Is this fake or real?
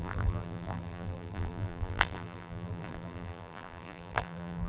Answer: fake